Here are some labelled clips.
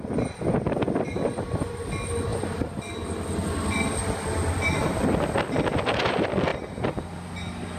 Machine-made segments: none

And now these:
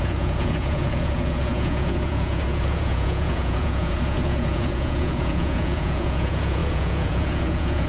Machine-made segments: 0.0-7.9 (vocoder, Vocos)

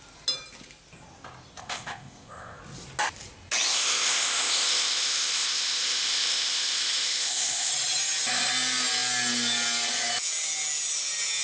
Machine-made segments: 1.6-2.6 (codec, ZipCodec); 3.7-7.7

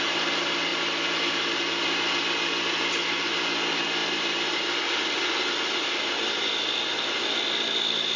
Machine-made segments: none

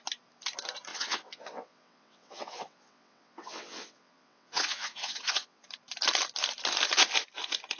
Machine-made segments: 0.9-5.6 (vocoder, WaveNeXt)

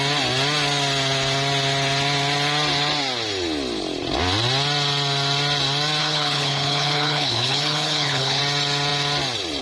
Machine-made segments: 6.0-8.4 (codec, HILCodec)